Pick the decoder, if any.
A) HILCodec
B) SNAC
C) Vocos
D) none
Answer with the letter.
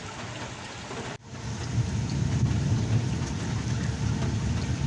D